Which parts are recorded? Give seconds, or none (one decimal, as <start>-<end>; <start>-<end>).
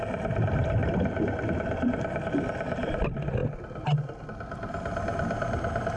0.0-6.0